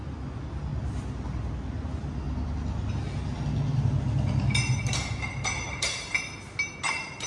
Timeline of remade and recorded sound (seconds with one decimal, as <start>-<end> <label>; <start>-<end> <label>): 0.0-7.3 recorded